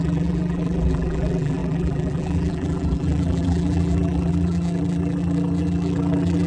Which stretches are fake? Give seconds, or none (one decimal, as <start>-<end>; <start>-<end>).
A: 0.0-6.5